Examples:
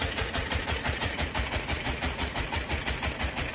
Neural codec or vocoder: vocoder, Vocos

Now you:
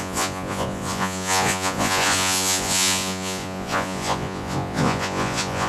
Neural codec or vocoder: vocoder, Vocos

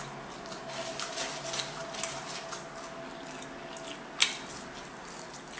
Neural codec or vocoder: none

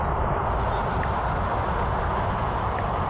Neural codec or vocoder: none